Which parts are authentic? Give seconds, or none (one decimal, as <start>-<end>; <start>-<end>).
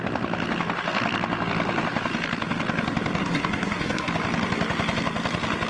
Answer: 0.0-3.2; 4.1-5.7